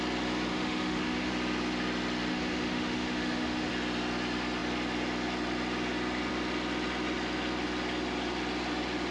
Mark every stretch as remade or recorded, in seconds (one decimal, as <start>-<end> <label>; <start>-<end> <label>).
0.0-0.5 recorded; 0.5-1.3 remade; 1.3-2.3 recorded; 2.3-3.7 remade; 3.7-9.1 recorded